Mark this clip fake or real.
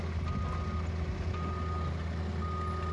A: real